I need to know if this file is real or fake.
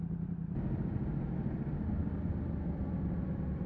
real